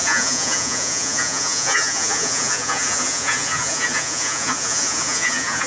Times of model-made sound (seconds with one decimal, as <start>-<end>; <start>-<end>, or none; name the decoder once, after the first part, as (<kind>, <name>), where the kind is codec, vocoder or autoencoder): 0.0-5.7 (vocoder, Vocos)